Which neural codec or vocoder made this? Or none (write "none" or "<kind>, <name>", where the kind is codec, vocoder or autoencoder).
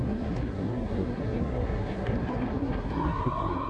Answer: codec, SNAC